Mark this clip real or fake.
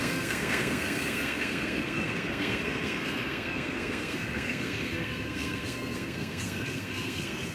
fake